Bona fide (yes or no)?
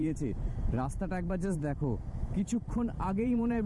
no